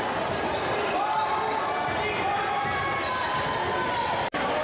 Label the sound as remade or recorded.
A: recorded